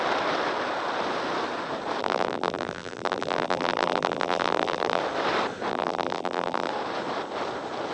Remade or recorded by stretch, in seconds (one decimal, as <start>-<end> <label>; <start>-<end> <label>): 0.0-2.0 recorded; 2.0-5.0 remade; 5.0-5.7 recorded; 5.7-6.7 remade; 6.7-7.9 recorded